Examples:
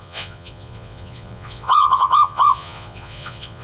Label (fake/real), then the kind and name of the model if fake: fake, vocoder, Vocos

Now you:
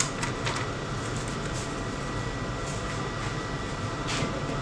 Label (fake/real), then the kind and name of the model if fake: real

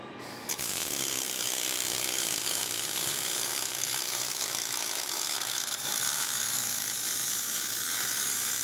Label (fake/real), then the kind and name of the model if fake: fake, codec, DAC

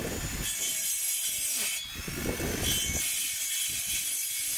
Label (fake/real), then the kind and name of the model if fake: real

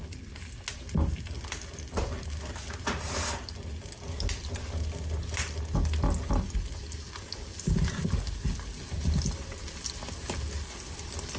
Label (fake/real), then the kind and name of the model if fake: real